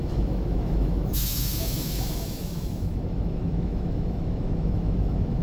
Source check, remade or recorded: remade